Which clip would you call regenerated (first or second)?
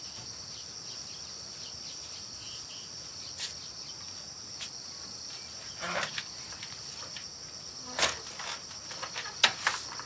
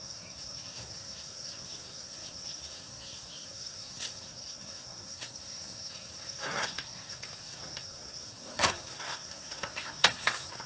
second